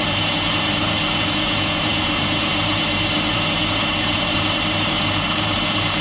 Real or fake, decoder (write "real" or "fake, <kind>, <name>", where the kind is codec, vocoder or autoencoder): fake, vocoder, BigVGAN v2